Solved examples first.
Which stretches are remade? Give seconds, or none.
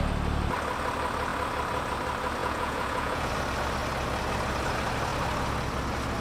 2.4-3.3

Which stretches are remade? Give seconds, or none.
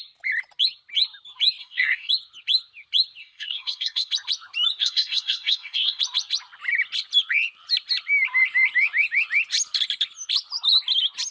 1.6-2.1; 3.2-4.1; 4.8-6.0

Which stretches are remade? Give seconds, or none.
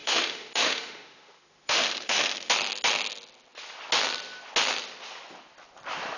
0.0-2.5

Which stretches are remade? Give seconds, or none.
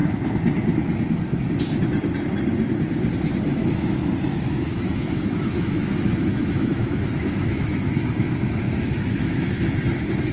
4.3-9.5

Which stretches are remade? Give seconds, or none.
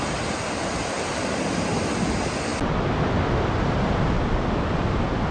none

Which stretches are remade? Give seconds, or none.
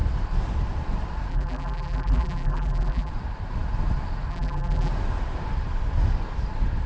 1.3-3.1; 4.3-4.9